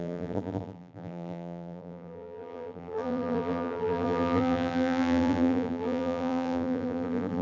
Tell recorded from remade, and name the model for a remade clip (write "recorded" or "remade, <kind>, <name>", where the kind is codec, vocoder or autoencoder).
remade, vocoder, BigVGAN v2